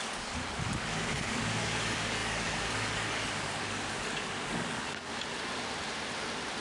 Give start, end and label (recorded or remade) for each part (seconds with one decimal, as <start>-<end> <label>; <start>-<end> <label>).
0.0-5.1 remade; 5.1-6.6 recorded